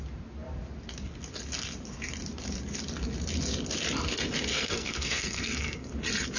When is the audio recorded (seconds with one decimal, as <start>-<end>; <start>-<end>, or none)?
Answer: 0.0-4.5; 5.9-6.4